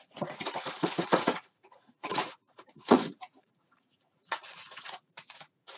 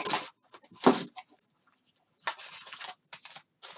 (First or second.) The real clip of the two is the second